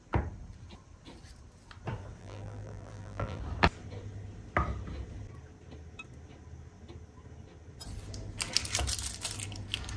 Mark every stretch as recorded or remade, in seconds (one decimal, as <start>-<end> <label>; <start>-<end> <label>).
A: 0.0-2.2 recorded; 2.2-3.4 remade; 3.4-10.0 recorded